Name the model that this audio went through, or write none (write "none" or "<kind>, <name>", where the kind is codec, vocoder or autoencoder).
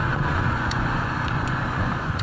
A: vocoder, Vocos